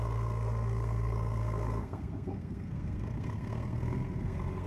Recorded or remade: remade